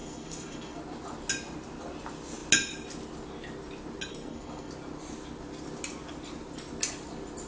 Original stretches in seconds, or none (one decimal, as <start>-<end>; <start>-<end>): 0.8-4.1; 4.7-7.5